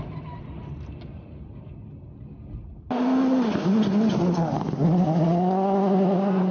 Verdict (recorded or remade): recorded